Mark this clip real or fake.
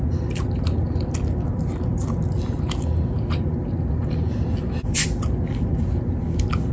real